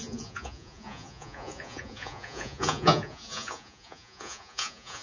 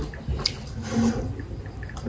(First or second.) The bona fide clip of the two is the second